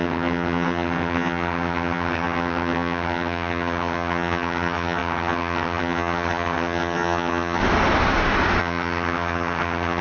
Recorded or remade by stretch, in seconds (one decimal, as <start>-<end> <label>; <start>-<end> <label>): 0.0-7.6 remade; 7.6-8.6 recorded; 8.6-10.0 remade